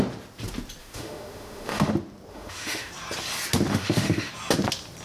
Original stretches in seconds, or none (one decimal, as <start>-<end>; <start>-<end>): 0.0-0.8; 1.9-2.3; 2.9-3.7; 4.3-5.0